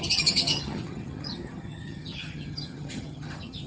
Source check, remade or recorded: remade